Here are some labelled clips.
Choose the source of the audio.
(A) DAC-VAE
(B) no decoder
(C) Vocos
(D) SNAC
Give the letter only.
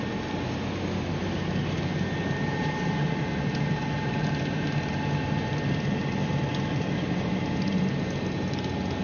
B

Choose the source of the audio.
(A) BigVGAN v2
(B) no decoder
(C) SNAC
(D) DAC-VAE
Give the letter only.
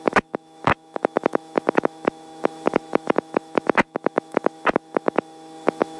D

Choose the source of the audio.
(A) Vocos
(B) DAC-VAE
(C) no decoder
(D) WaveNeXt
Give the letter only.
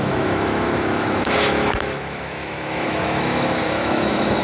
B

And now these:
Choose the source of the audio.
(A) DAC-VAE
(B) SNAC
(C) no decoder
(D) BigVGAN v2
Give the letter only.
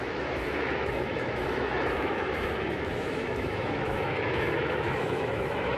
A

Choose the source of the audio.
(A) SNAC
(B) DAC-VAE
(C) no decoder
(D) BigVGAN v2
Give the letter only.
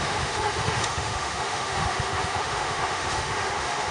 B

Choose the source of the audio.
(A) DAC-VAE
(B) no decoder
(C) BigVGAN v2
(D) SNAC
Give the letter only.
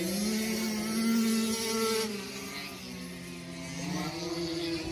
B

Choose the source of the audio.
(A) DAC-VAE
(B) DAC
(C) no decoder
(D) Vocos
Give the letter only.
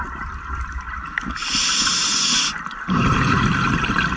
C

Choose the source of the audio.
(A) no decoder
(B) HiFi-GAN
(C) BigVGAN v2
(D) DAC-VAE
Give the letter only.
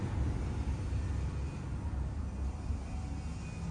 A